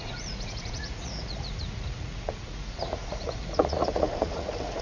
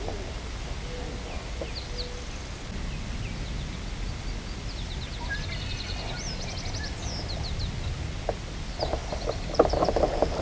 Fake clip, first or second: first